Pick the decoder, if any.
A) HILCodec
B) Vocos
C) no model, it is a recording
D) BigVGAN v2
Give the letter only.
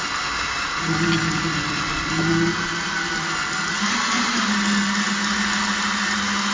C